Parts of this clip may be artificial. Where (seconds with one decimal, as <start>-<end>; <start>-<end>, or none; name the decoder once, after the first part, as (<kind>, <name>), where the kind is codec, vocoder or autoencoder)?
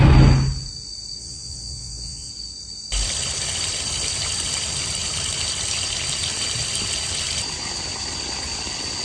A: 1.2-2.3 (vocoder, Vocos)